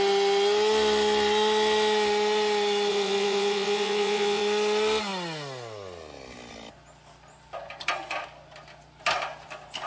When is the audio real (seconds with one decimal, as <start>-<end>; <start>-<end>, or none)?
0.0-2.9; 4.4-9.9